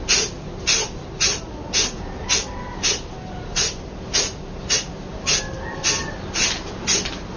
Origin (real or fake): real